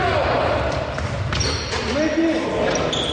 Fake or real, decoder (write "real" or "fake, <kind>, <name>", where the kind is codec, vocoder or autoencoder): real